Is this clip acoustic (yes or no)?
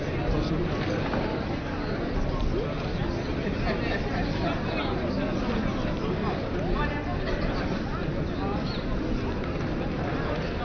yes